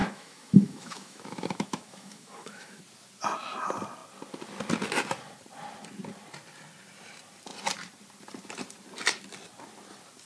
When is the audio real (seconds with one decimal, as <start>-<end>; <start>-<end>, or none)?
2.8-10.3